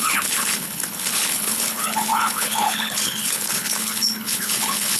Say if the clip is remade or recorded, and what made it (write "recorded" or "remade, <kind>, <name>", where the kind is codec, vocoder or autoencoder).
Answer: remade, codec, HILCodec